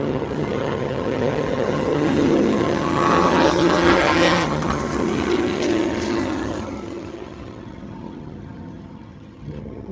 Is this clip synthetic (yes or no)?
yes